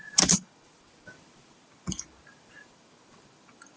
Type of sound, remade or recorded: remade